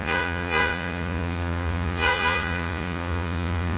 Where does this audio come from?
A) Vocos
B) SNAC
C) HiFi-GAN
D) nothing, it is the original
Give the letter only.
A